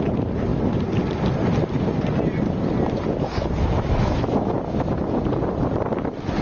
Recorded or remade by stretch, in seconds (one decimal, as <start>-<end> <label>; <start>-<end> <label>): 0.0-3.6 recorded; 3.6-5.2 remade; 5.2-6.4 recorded

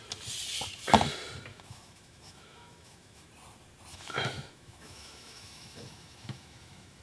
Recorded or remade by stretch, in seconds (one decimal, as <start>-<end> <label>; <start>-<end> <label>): 0.0-1.5 recorded; 1.5-3.3 remade; 3.3-3.9 recorded; 3.9-7.0 remade